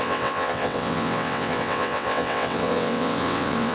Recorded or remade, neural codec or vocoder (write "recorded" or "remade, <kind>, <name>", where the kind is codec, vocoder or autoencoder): remade, vocoder, WaveNeXt